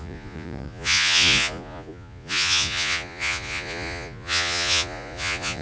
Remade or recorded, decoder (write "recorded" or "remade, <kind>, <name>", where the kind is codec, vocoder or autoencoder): remade, vocoder, Vocos